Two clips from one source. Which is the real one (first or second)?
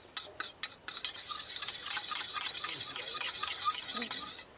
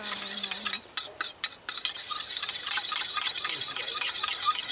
first